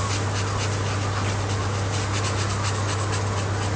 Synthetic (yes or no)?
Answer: no